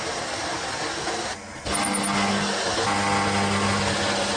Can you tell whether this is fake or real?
real